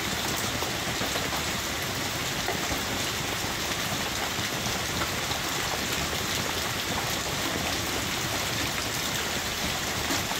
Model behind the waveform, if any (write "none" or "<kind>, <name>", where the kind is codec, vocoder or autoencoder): none